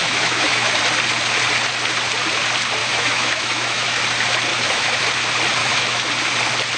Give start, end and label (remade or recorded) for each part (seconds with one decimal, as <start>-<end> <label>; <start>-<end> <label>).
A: 0.0-0.8 remade; 0.8-2.8 recorded; 2.8-4.0 remade; 4.0-4.5 recorded; 4.5-5.0 remade; 5.0-5.6 recorded; 5.6-6.1 remade; 6.1-6.8 recorded